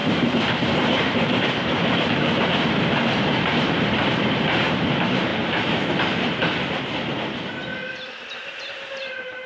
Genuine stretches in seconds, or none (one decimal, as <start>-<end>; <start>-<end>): 7.7-8.7